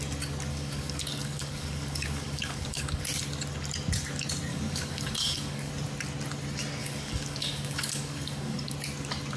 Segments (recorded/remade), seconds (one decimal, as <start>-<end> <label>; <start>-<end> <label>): 0.0-0.5 recorded; 0.5-3.0 remade; 3.0-4.5 recorded; 4.5-5.7 remade; 5.7-6.8 recorded; 6.8-8.7 remade; 8.7-9.4 recorded